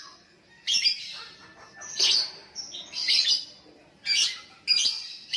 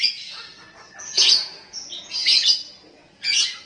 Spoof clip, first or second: second